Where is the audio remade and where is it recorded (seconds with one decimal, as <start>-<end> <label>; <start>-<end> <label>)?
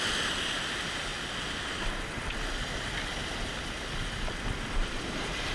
0.0-1.1 remade; 1.1-3.1 recorded; 3.1-5.5 remade